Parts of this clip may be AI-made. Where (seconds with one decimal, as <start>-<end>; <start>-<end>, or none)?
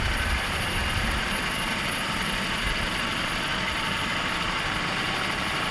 0.8-3.1